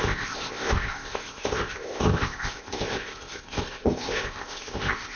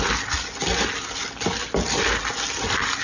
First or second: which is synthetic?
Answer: first